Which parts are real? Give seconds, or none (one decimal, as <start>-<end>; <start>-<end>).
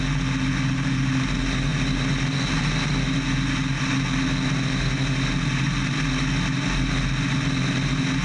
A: 0.0-8.2